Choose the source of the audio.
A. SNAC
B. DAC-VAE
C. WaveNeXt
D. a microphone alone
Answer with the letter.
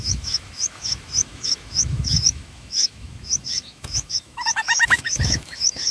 B